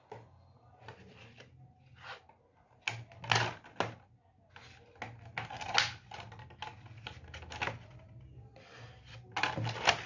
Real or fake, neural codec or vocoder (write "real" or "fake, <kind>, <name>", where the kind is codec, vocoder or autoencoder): real